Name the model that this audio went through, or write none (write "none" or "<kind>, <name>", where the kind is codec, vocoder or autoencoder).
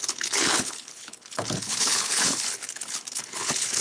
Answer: codec, HILCodec